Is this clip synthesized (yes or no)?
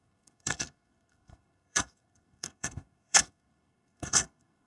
yes